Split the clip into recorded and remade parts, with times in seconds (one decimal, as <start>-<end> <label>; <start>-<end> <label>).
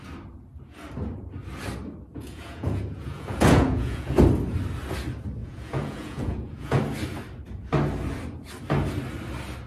0.0-2.1 recorded; 2.1-4.2 remade; 4.2-5.4 recorded; 5.4-6.8 remade; 6.8-9.7 recorded